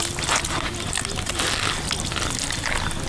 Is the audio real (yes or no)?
yes